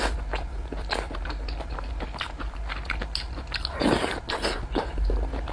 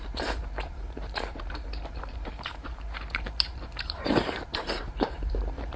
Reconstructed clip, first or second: second